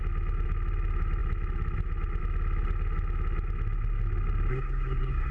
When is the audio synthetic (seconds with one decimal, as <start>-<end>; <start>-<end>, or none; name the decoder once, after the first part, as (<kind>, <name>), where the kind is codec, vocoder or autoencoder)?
4.5-5.3 (codec, SNAC)